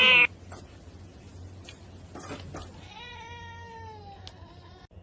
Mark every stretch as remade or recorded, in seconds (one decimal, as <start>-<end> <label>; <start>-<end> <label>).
0.0-5.0 recorded